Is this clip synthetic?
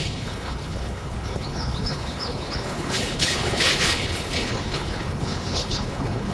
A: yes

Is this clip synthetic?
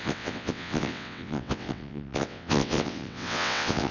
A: yes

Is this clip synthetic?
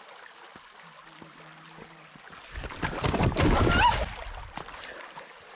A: no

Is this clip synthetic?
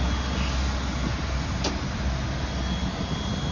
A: no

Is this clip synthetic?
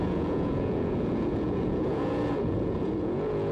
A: yes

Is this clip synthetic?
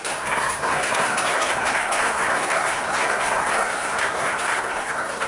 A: yes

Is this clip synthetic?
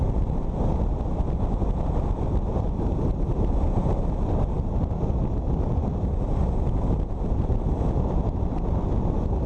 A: no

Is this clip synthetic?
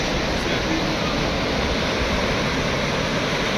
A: no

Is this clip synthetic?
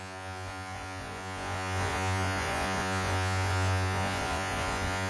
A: yes